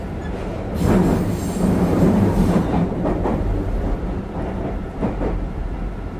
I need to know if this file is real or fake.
fake